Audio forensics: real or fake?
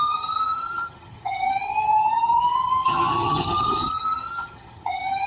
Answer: fake